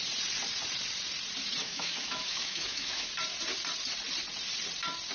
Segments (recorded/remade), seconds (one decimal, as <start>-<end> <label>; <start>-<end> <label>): 0.0-1.6 recorded; 1.6-3.1 remade; 3.1-5.1 recorded

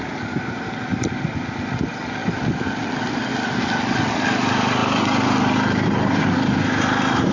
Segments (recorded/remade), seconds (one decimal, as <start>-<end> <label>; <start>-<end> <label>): 0.0-7.3 recorded

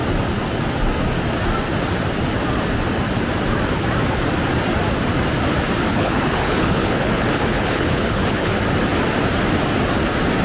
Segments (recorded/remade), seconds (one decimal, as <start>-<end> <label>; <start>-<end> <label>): 0.0-5.9 recorded; 5.9-8.5 remade; 8.5-10.4 recorded

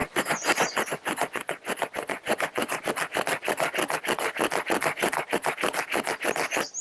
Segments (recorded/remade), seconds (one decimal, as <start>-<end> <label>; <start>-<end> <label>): 0.0-2.8 remade; 2.8-6.8 recorded

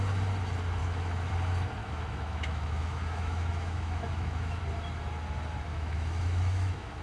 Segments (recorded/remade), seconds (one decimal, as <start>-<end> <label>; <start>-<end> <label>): 0.0-0.8 recorded; 0.8-1.3 remade; 1.3-1.8 recorded; 1.8-4.6 remade; 4.6-5.7 recorded; 5.7-7.0 remade